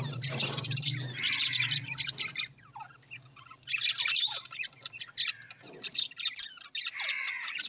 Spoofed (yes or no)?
no